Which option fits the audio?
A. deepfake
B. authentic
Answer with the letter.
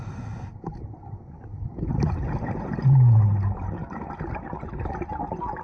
B